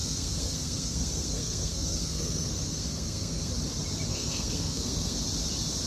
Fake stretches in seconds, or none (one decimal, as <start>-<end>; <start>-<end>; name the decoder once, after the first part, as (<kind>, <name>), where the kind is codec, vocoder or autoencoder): 0.0-3.5 (codec, SNAC); 4.1-5.2